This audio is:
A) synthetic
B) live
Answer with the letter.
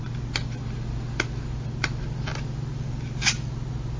B